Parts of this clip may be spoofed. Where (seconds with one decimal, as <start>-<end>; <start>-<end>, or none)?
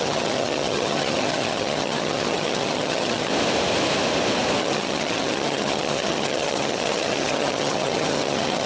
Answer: 0.0-3.3; 4.6-8.7